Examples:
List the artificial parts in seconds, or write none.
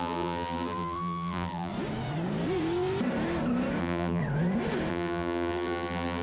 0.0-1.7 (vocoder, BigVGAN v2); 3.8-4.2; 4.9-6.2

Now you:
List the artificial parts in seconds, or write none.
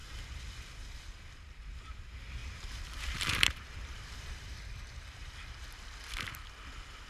2.4-4.1 (vocoder, BigVGAN v2)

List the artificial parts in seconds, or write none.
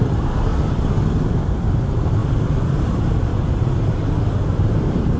0.0-0.5 (vocoder, BigVGAN v2); 1.6-2.2; 2.8-3.3; 3.9-5.2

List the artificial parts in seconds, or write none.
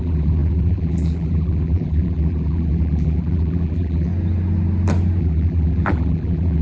0.0-4.1 (vocoder, BigVGAN v2); 5.2-6.6